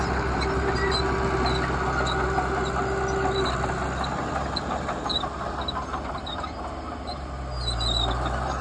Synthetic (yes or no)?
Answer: no